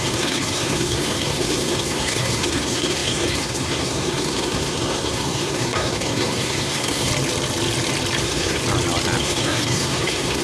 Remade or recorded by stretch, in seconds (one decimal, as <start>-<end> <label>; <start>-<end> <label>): 0.0-7.1 remade; 7.1-8.2 recorded; 8.2-8.6 remade; 8.6-9.2 recorded; 9.2-10.4 remade

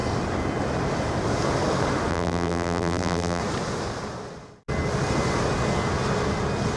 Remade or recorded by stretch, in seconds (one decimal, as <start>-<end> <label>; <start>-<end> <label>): 0.0-2.1 recorded; 2.1-3.4 remade; 3.4-6.8 recorded